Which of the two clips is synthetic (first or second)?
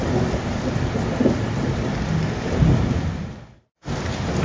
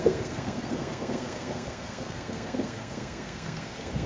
second